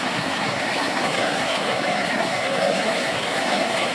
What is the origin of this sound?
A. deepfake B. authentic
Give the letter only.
A